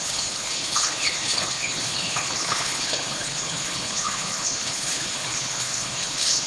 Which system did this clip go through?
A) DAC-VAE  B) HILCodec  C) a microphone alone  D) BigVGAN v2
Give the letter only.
B